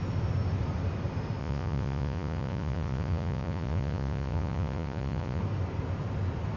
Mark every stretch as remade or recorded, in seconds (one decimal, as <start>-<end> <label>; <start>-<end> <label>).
0.0-1.4 recorded; 1.4-5.4 remade; 5.4-6.6 recorded